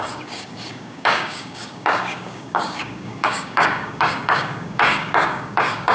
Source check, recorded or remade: remade